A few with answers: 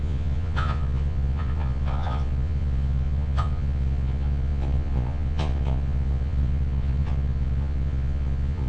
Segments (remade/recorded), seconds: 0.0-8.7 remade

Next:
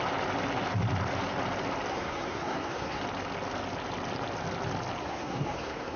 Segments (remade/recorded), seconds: 0.0-1.9 recorded; 1.9-3.0 remade; 3.0-5.0 recorded; 5.0-6.0 remade

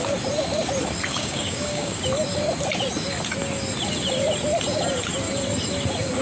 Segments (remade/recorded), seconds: 0.0-1.1 recorded; 1.1-2.0 remade; 2.0-6.2 recorded